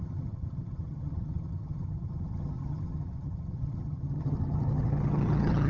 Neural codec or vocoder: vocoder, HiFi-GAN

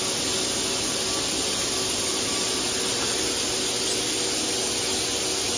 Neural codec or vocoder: none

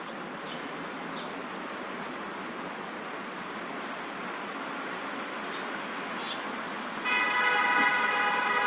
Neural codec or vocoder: none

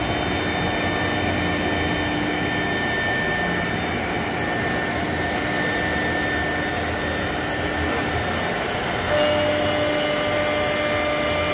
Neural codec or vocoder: none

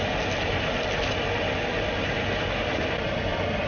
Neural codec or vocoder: none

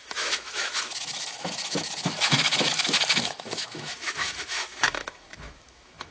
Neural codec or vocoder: autoencoder, DAC-VAE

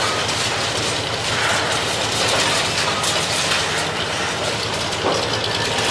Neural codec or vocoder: none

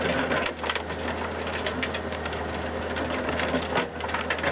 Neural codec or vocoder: none